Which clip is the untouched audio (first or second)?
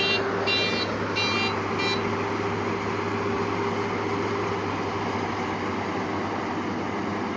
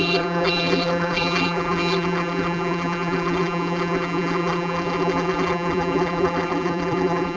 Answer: first